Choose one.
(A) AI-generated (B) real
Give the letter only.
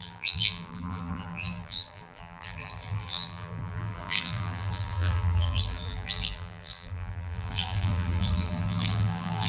A